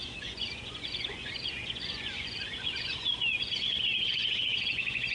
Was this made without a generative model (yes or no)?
no